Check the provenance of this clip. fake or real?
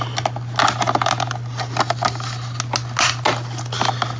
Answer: real